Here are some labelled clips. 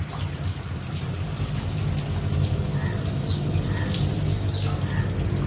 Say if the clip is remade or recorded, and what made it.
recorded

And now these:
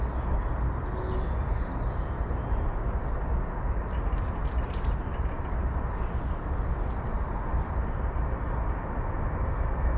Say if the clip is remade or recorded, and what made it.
recorded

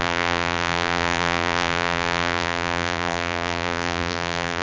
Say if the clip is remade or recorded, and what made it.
remade, vocoder, BigVGAN v2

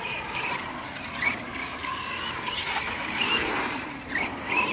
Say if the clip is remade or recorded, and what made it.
remade, vocoder, BigVGAN v2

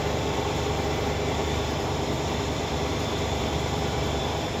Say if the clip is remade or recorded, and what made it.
remade, vocoder, BigVGAN v2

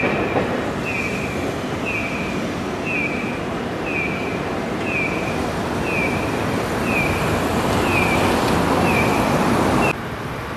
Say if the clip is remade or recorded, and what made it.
recorded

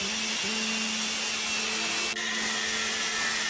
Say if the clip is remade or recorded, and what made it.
recorded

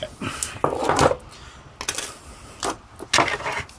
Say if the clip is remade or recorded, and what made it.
recorded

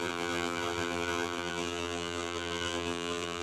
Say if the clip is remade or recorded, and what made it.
remade, vocoder, BigVGAN v2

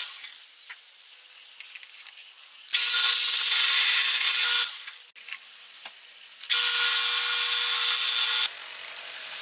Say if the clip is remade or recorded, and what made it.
recorded